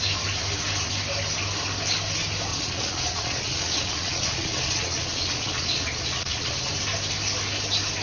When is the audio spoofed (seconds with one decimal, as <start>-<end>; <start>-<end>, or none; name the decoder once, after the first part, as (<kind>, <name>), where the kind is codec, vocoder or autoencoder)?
2.5-6.7 (vocoder, Vocos)